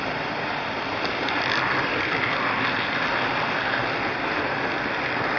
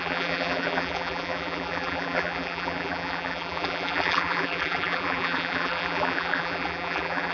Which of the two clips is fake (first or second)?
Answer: second